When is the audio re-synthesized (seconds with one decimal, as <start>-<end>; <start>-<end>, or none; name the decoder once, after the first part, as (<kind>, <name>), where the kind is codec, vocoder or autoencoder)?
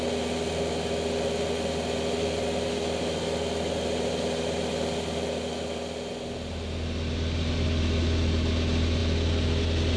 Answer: none